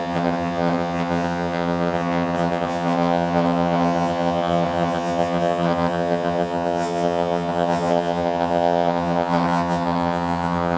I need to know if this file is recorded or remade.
remade